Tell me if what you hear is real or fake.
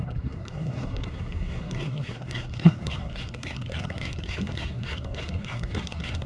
fake